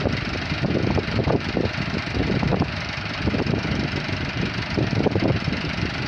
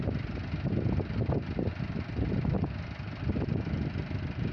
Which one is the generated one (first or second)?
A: first